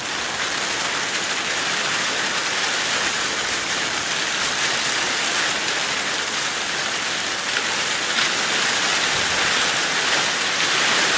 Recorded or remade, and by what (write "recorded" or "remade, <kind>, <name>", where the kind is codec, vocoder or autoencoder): remade, vocoder, BigVGAN v2